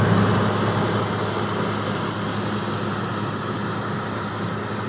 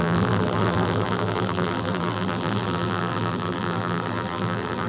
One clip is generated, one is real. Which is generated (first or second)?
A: second